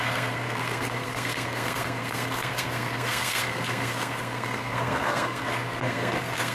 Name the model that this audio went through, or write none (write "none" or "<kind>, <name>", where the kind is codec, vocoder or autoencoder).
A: codec, SNAC